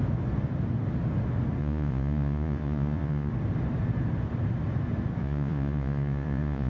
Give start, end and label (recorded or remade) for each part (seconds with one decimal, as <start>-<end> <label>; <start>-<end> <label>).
0.0-1.6 recorded; 1.6-3.3 remade; 3.3-5.2 recorded; 5.2-6.7 remade